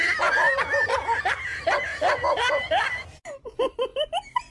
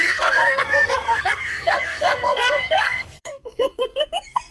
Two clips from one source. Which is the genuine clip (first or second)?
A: first